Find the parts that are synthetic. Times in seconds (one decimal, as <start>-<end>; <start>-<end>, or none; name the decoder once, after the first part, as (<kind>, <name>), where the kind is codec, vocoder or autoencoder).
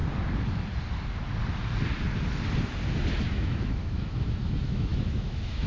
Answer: 3.2-5.7 (autoencoder, DAC-VAE)